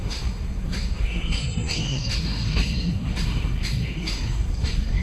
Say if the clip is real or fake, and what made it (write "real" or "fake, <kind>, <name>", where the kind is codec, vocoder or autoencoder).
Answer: fake, codec, SNAC